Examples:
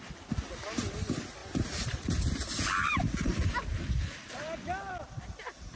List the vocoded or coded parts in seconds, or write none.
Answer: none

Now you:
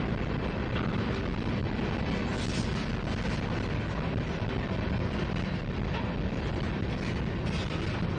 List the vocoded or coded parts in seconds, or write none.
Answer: none